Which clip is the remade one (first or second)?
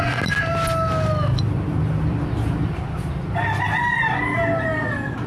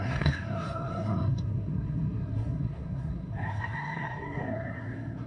second